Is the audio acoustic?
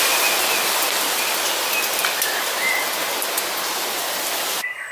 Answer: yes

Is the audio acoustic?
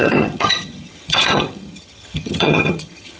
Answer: no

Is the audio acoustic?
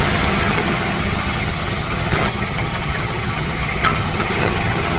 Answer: no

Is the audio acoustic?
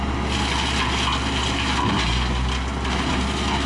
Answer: yes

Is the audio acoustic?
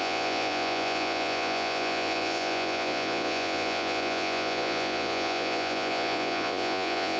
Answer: no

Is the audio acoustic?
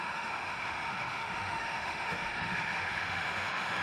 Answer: no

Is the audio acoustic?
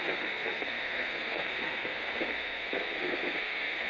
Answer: no